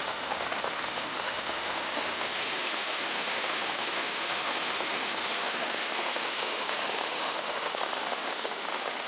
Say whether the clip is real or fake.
fake